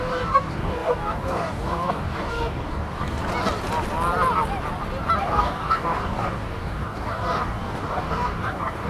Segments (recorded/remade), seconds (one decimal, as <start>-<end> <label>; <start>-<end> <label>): 0.0-3.2 remade; 3.2-5.2 recorded; 5.2-8.9 remade